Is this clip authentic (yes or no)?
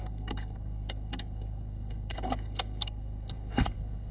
no